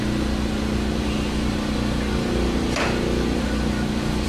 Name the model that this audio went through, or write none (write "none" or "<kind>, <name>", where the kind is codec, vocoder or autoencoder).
none